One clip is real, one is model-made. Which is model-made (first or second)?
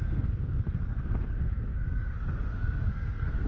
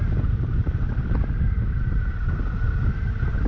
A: first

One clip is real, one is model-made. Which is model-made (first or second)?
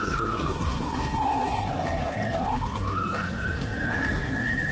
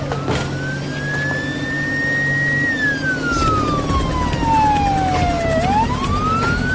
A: first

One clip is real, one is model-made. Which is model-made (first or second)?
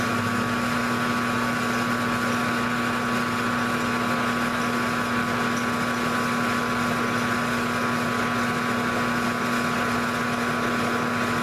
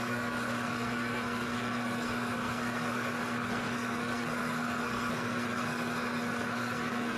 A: second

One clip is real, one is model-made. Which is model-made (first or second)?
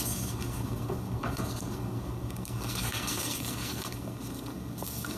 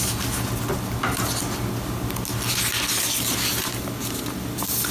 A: first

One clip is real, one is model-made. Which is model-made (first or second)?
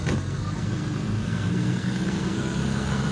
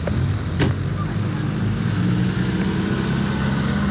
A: first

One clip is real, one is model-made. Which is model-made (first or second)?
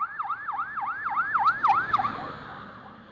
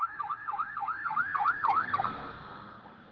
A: second